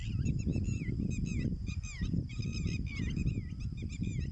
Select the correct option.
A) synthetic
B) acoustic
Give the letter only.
B